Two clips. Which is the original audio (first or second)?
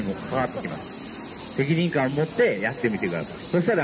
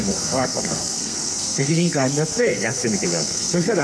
first